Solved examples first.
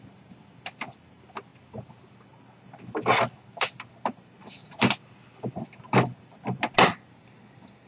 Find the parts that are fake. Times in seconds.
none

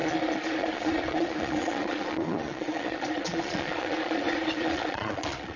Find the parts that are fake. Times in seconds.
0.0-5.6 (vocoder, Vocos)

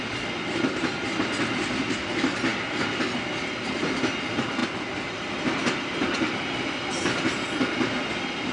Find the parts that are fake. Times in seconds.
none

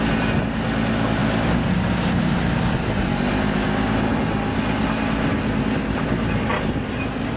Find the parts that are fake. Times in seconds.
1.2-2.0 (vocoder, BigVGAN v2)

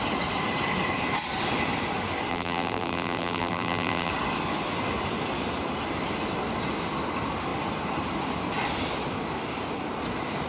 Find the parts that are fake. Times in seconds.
2.3-4.1 (vocoder, BigVGAN v2)

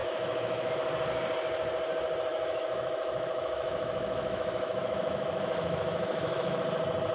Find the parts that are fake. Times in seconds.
0.0-0.7 (autoencoder, DAC-VAE); 2.3-6.6